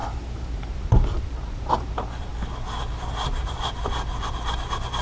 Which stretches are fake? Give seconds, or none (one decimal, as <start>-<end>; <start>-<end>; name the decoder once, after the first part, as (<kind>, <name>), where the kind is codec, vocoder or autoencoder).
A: 0.0-2.3 (vocoder, BigVGAN v2); 2.9-5.0